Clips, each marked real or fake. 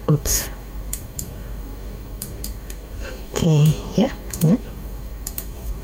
fake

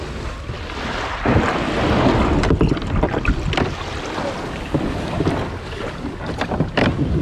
real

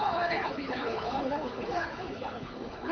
fake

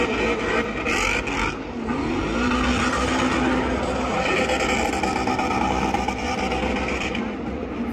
real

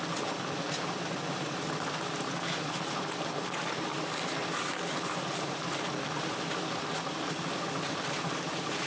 real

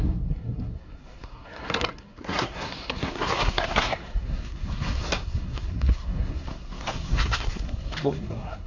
fake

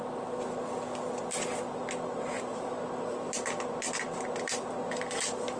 real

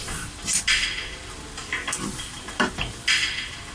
real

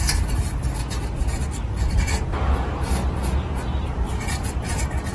fake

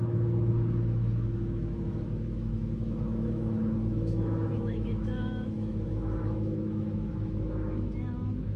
fake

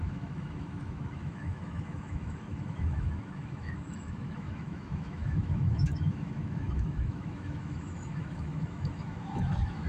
fake